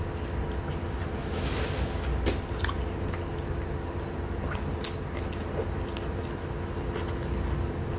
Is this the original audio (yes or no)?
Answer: yes